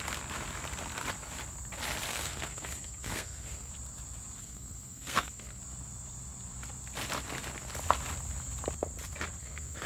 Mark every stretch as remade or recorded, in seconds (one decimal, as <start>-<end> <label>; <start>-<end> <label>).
0.0-2.1 recorded; 2.1-3.7 remade; 3.7-4.4 recorded; 4.4-5.6 remade; 5.6-9.4 recorded; 9.4-9.9 remade